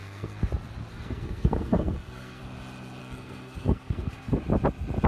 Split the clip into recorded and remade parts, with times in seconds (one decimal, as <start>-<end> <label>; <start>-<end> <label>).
0.0-0.5 remade; 0.5-0.9 recorded; 0.9-2.4 remade; 2.4-3.0 recorded; 3.0-4.4 remade; 4.4-5.1 recorded